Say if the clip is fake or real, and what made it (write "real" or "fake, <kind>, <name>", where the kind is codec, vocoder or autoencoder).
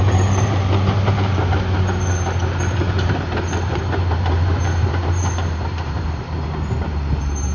fake, vocoder, BigVGAN v2